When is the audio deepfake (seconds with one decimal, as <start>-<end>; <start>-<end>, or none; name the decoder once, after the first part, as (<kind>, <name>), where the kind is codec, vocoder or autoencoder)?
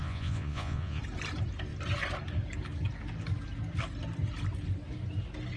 0.0-1.0 (vocoder, Vocos)